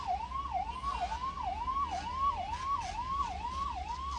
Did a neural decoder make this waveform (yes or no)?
no